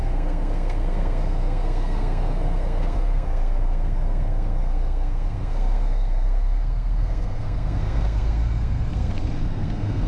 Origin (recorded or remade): remade